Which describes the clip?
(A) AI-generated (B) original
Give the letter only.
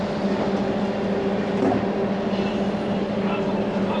B